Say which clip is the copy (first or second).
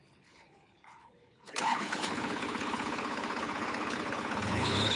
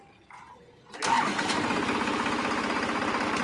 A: first